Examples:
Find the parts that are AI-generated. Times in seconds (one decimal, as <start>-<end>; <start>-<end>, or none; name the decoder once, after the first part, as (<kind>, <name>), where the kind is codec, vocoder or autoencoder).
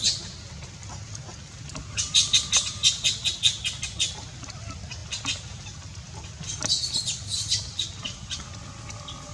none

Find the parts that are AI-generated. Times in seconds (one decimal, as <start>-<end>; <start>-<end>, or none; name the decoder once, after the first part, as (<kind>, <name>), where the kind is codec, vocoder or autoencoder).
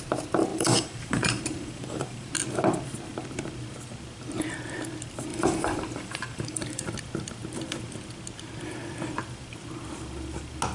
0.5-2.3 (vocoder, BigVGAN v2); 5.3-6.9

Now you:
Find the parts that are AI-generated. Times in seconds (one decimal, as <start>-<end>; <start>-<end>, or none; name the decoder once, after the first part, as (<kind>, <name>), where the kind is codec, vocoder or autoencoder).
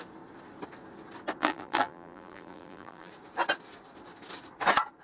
1.4-3.1 (vocoder, BigVGAN v2)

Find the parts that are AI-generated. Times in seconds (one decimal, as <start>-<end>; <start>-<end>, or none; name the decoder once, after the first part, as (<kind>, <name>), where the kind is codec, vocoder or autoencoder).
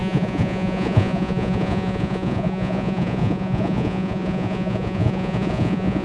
0.0-6.0 (vocoder, Vocos)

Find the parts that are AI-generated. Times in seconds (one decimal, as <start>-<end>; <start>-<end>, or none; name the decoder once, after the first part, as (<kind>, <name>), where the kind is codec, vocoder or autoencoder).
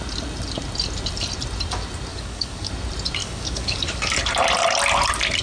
2.1-2.7 (codec, DAC); 3.2-4.1